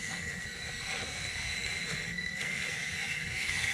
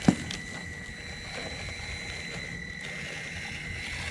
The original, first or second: second